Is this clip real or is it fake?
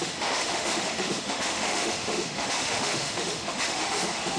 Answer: fake